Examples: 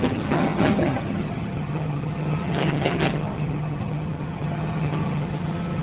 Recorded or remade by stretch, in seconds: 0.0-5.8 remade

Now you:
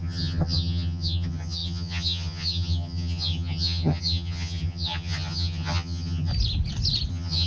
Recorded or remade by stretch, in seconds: 0.0-6.3 remade; 6.3-7.1 recorded; 7.1-7.5 remade

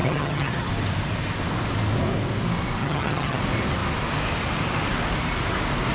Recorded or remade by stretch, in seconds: 0.0-0.7 remade; 0.7-2.8 recorded; 2.8-3.4 remade; 3.4-5.9 recorded

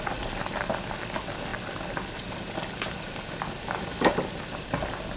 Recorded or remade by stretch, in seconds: 0.0-5.2 recorded